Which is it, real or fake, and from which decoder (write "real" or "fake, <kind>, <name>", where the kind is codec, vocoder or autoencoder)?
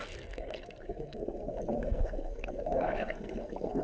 fake, codec, SNAC